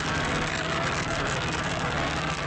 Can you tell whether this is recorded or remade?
remade